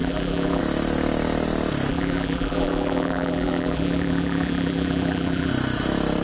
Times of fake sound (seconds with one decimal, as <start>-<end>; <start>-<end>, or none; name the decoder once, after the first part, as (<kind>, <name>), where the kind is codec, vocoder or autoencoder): 0.0-0.6 (vocoder, BigVGAN v2); 1.9-5.5